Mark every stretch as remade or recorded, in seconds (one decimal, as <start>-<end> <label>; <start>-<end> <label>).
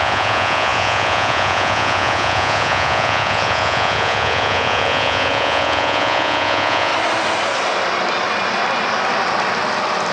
0.0-6.9 remade; 6.9-10.1 recorded